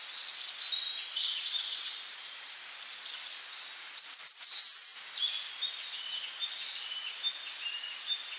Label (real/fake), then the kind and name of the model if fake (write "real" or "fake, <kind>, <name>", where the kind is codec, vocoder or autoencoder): real